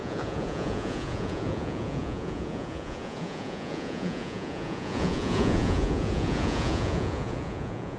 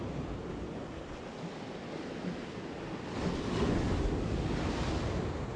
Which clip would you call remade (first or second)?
first